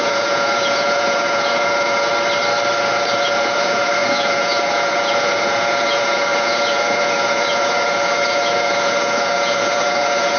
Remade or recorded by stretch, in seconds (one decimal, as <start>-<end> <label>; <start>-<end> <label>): 0.0-2.1 remade; 2.1-2.8 recorded; 2.8-10.4 remade